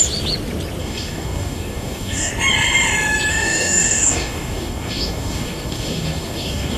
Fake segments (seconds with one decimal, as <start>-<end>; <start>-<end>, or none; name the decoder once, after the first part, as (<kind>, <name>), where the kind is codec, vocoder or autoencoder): 0.8-2.3 (codec, DAC); 3.3-6.8